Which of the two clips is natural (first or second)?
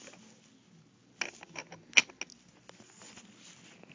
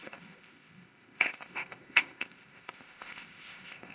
first